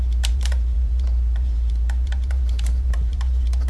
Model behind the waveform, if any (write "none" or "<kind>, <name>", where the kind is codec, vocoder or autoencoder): vocoder, BigVGAN v2